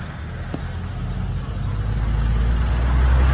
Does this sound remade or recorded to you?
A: recorded